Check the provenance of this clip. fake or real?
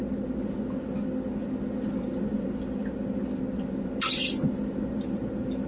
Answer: real